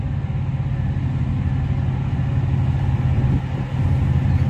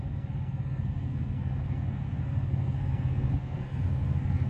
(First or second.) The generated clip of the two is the second